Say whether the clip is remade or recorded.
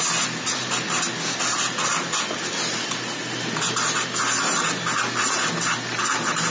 recorded